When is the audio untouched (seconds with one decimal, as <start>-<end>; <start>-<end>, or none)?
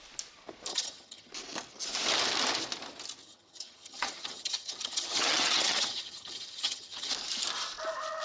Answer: 0.0-0.7; 1.3-3.2; 7.1-8.2